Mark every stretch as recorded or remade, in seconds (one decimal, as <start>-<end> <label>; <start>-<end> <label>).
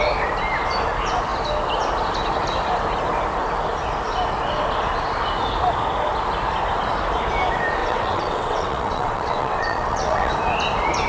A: 0.0-7.8 recorded; 7.8-10.3 remade; 10.3-11.1 recorded